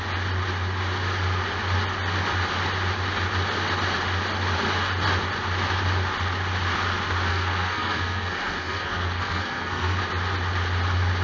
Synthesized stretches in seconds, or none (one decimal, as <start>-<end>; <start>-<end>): 7.3-10.0

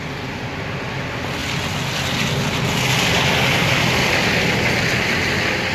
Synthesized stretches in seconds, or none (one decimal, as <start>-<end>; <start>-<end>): none

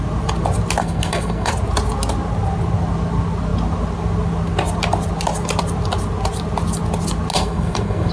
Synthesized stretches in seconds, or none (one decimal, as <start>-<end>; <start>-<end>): 0.8-1.5; 7.3-8.1

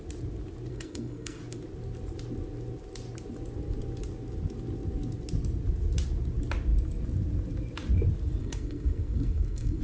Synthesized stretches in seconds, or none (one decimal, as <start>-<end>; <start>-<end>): 0.7-1.4; 8.4-9.8

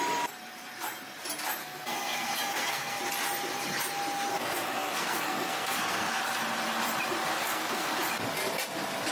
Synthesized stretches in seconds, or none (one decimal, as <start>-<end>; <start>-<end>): 1.6-3.0; 4.3-6.2; 7.3-7.9